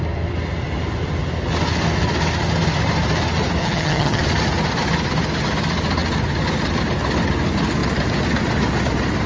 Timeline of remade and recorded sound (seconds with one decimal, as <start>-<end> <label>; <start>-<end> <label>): 0.0-3.6 recorded; 3.6-4.2 remade; 4.2-9.3 recorded